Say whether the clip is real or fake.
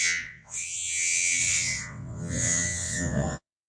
fake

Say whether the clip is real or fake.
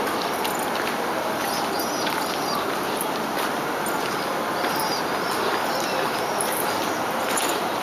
real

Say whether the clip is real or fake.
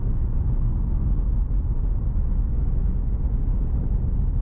real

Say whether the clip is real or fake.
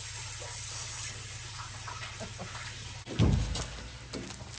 real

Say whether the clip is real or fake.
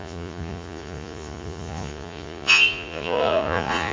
fake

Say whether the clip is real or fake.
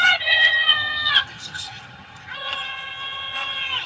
fake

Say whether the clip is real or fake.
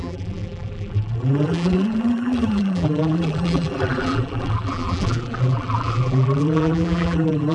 fake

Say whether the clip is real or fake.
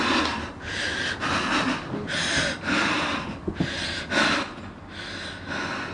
real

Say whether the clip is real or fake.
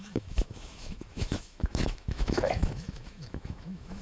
fake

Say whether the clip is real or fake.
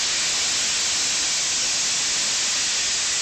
real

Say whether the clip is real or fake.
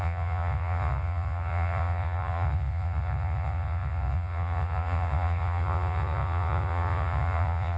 fake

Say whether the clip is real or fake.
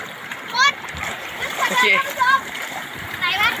fake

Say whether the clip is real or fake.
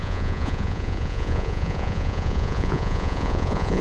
fake